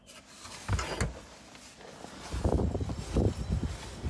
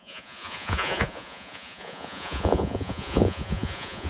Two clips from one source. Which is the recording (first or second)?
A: first